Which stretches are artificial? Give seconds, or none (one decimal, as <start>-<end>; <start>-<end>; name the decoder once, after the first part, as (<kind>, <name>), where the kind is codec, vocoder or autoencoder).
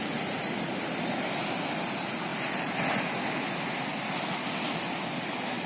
none